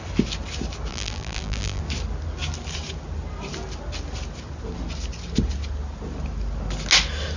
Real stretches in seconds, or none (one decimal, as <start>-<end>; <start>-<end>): 0.0-0.9; 1.8-7.4